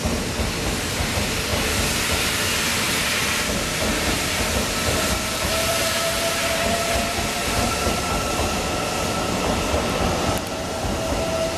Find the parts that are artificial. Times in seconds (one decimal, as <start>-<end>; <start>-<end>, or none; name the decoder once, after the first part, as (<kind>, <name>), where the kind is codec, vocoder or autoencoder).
1.5-6.6 (vocoder, BigVGAN v2)